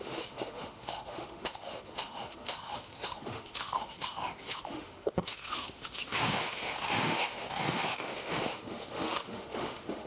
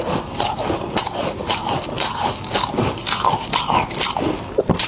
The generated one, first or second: first